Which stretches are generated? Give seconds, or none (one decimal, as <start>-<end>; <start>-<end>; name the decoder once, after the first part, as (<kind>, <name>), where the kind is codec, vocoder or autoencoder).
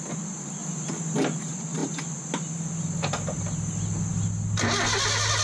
none